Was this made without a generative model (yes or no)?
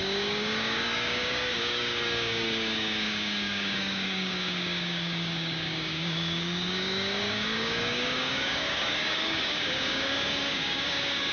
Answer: no